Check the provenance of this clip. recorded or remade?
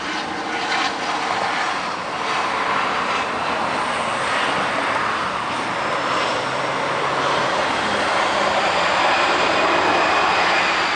recorded